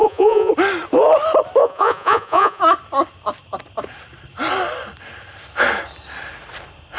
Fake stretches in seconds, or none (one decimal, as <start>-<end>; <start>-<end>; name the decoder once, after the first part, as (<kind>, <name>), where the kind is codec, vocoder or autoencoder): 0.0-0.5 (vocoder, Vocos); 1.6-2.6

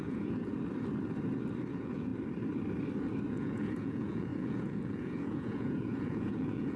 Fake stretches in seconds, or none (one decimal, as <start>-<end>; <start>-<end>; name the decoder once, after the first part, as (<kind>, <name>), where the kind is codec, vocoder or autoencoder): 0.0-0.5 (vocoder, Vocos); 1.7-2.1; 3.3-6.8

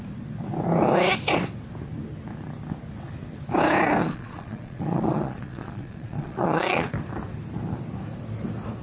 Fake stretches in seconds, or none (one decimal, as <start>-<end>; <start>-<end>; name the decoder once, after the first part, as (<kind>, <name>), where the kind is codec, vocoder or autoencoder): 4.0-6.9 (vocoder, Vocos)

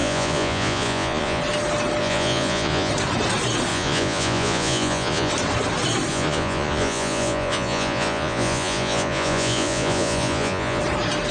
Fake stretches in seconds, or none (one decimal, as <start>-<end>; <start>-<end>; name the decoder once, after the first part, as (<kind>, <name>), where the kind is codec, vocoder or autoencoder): 0.0-1.4 (vocoder, Vocos); 2.0-2.9; 3.7-5.3; 6.1-10.8